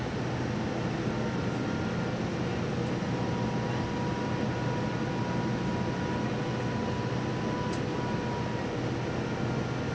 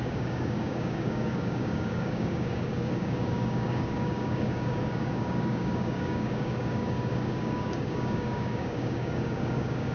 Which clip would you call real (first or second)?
first